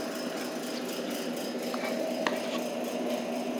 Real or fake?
real